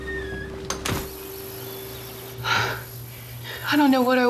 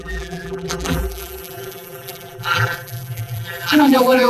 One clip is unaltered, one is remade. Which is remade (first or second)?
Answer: second